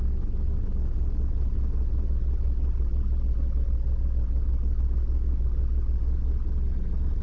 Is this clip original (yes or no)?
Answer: yes